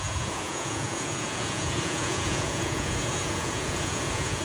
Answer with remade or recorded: remade